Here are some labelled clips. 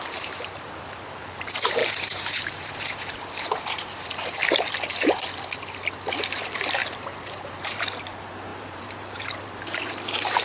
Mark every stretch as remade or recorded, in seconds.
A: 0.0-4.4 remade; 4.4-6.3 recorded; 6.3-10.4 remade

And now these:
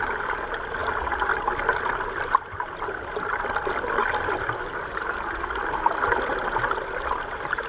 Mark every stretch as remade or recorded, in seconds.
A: 0.0-7.7 recorded

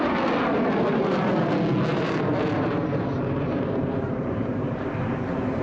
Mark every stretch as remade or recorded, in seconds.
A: 0.0-0.9 recorded; 0.9-1.5 remade; 1.5-1.9 recorded; 1.9-5.6 remade

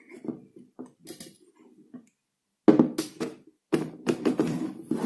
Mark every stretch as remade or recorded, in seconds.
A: 0.0-1.0 remade; 1.0-4.1 recorded; 4.1-5.1 remade

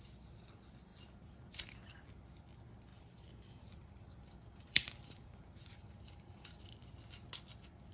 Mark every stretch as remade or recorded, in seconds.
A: 0.0-0.9 recorded; 0.9-1.5 remade; 1.5-2.9 recorded; 2.9-6.6 remade; 6.6-7.9 recorded

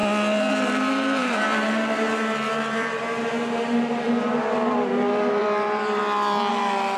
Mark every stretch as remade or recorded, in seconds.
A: 0.0-0.5 recorded; 0.5-6.0 remade; 6.0-6.5 recorded; 6.5-7.0 remade

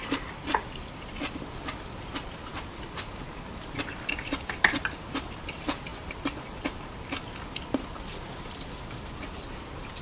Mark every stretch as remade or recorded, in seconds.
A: 0.0-2.5 remade; 2.5-5.1 recorded; 5.1-5.9 remade; 5.9-9.5 recorded; 9.5-10.0 remade